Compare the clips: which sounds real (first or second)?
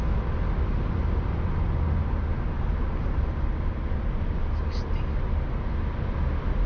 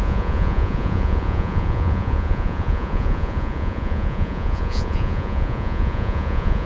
first